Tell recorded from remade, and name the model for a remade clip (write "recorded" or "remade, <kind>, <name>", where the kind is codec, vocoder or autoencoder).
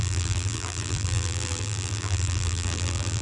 remade, vocoder, BigVGAN v2